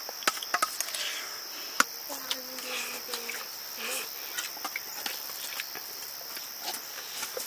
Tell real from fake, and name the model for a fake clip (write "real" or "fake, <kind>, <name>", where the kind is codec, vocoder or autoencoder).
real